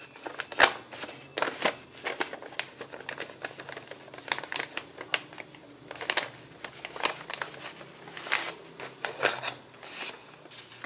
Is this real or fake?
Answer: real